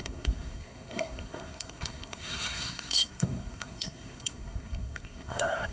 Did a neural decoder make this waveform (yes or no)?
yes